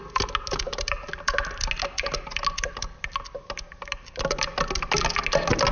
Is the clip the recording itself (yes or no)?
yes